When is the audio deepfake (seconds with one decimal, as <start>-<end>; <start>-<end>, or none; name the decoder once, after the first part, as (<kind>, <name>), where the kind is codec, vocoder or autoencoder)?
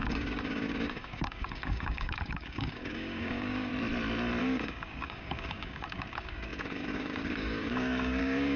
0.0-3.7 (codec, DAC); 4.4-8.6